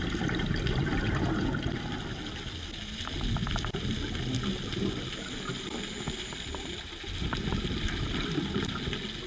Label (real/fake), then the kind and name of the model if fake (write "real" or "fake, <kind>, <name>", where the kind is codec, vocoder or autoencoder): real